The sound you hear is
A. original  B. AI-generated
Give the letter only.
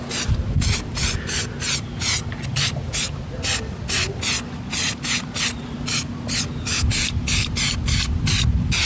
A